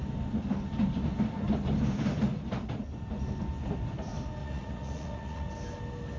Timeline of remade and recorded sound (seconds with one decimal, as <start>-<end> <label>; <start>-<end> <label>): 0.0-4.4 recorded; 4.4-5.5 remade; 5.5-6.2 recorded